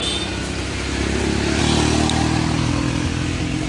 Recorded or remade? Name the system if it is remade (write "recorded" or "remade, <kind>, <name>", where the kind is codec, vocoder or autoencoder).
recorded